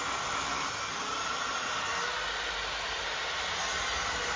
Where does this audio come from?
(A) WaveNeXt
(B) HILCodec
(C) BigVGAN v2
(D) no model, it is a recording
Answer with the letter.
D